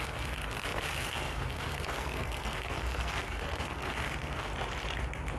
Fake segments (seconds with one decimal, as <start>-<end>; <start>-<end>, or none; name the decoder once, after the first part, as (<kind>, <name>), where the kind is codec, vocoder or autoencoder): 0.0-4.5 (codec, SNAC)